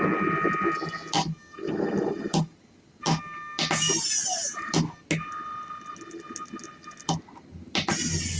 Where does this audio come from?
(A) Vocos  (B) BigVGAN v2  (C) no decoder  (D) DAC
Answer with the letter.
C